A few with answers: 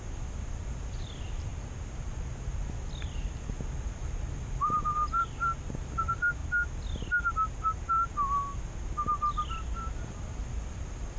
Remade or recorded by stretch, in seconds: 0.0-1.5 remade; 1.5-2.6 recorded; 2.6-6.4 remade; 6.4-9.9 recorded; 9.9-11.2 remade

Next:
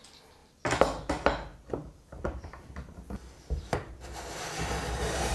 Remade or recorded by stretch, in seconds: 0.0-1.5 recorded; 1.5-4.7 remade; 4.7-5.3 recorded

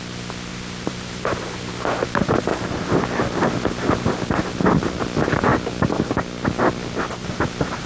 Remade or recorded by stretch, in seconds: 0.0-0.5 recorded; 0.5-1.7 remade; 1.7-7.9 recorded

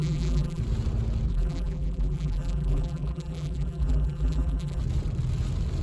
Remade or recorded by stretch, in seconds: 0.0-0.6 remade; 0.6-1.3 recorded; 1.3-4.8 remade; 4.8-5.8 recorded

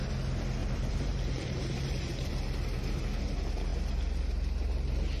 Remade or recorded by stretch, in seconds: 0.0-0.6 recorded; 0.6-2.3 remade; 2.3-5.2 recorded

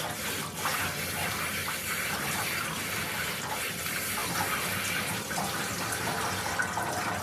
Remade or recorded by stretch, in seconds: 0.0-1.6 recorded; 1.6-2.9 remade; 2.9-7.2 recorded

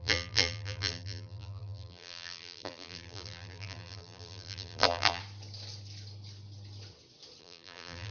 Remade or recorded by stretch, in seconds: 0.0-5.2 remade; 5.2-7.4 recorded; 7.4-8.1 remade

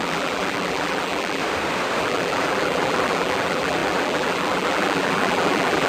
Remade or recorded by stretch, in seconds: 0.0-1.4 remade; 1.4-2.0 recorded; 2.0-5.9 remade